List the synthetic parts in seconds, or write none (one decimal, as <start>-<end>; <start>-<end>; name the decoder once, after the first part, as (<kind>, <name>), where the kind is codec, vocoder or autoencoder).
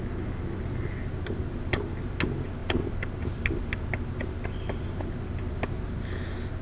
none